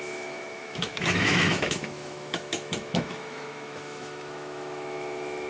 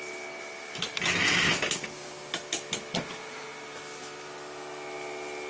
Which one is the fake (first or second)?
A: first